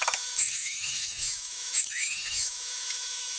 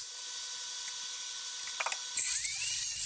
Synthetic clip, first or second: first